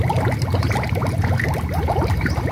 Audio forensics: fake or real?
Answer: real